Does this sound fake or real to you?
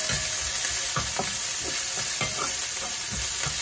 real